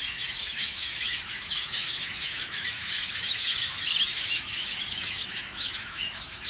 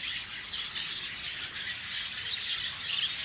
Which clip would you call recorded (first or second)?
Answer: second